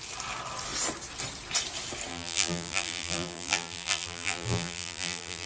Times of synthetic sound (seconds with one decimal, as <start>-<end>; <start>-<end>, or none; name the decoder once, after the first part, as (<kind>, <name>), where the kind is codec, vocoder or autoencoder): 2.1-5.5 (vocoder, BigVGAN v2)